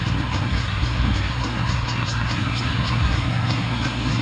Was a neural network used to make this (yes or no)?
yes